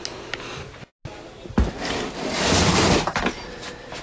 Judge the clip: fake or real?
real